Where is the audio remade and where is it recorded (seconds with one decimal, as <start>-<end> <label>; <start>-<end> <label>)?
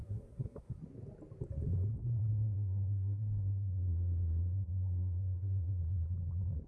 0.0-0.8 remade; 0.8-2.3 recorded; 2.3-5.8 remade; 5.8-6.7 recorded